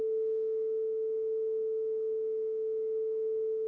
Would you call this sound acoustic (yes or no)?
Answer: no